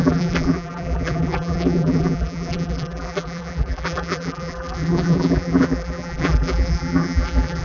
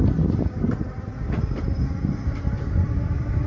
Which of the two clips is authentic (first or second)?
second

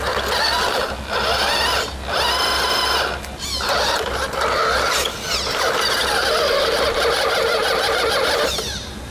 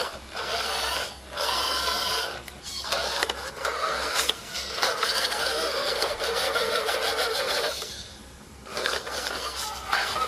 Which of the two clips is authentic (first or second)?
first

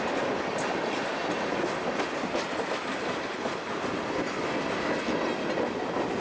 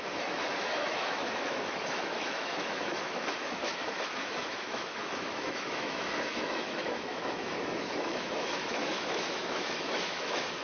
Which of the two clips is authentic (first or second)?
first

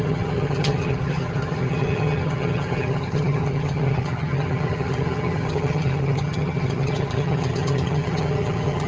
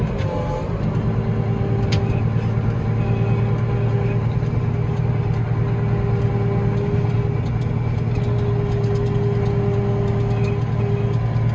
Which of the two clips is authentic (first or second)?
second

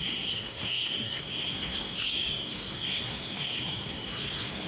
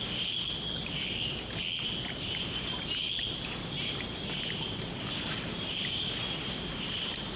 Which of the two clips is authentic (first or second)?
second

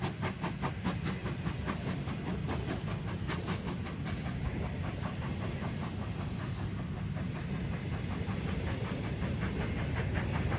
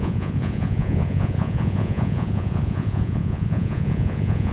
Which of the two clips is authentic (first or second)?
first